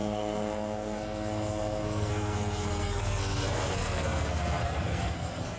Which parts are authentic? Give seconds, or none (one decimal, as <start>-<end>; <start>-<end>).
none